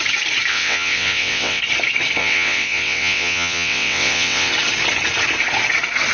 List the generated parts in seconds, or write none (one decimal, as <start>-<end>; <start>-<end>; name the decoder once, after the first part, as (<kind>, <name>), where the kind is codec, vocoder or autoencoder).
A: 0.5-1.6 (vocoder, WaveNeXt); 2.2-4.5

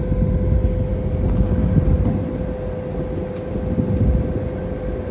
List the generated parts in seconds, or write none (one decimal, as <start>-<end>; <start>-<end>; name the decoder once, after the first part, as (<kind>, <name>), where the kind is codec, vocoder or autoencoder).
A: none

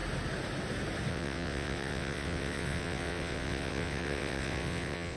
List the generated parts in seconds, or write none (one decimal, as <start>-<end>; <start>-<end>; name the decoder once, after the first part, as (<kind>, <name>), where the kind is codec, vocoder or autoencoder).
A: 1.1-5.2 (vocoder, WaveNeXt)

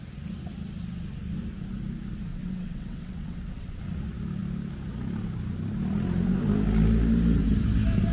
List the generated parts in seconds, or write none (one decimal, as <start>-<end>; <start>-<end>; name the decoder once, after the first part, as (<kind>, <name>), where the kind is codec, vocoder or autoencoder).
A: 2.3-3.8 (vocoder, WaveNeXt)